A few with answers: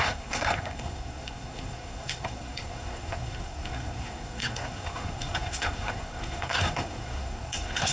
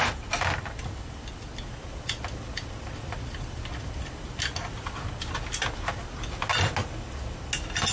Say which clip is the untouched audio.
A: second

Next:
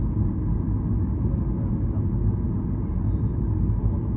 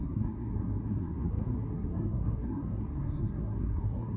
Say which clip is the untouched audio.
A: first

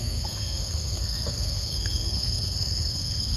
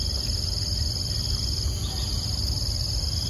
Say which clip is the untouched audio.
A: second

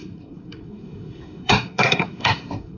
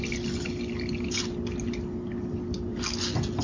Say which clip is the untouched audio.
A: second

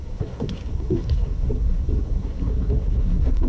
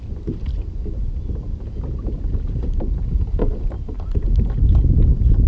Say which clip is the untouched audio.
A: second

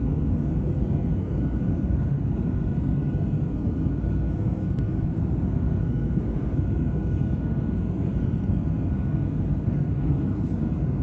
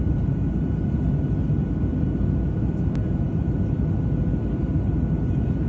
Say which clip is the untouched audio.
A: second